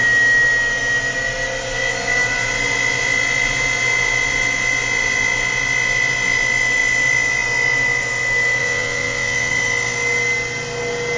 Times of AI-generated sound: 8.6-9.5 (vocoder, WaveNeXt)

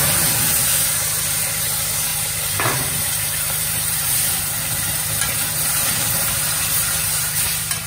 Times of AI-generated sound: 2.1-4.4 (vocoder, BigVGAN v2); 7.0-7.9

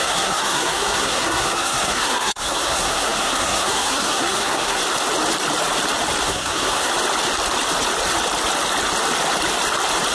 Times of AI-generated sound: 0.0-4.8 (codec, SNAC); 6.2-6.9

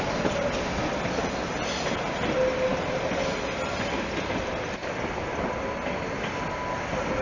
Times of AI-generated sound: none